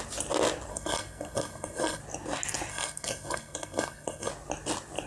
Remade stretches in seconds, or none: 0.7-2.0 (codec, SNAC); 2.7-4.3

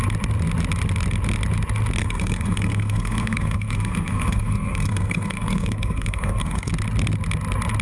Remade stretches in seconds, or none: 2.0-6.7 (codec, SNAC)

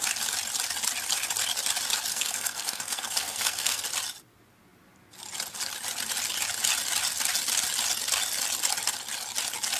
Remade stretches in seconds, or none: 2.1-3.8 (codec, SNAC)

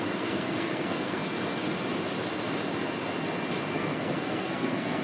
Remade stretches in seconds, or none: 0.0-1.2 (codec, SNAC); 3.7-5.0

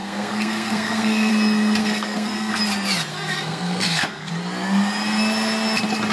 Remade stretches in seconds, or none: 0.0-1.3 (codec, SNAC); 1.8-2.5; 3.1-4.3

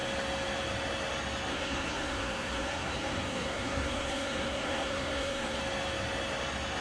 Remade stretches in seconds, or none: 1.5-5.6 (codec, SNAC)

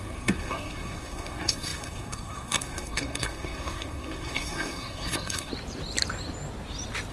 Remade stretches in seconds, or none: 0.0-5.5 (codec, SNAC)

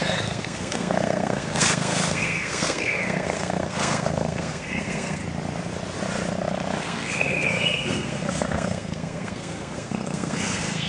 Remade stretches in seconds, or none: 0.0-5.2 (codec, SNAC); 6.8-10.9